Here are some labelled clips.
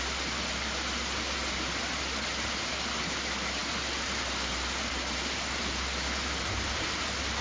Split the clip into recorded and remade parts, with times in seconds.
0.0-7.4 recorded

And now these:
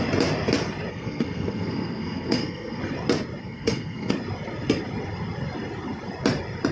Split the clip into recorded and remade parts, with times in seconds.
0.0-0.9 recorded; 0.9-2.8 remade; 2.8-3.4 recorded; 3.4-4.1 remade; 4.1-6.7 recorded

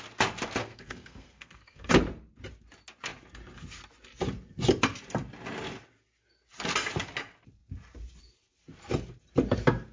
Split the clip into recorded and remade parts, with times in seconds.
0.0-0.6 recorded; 0.6-1.9 remade; 1.9-9.9 recorded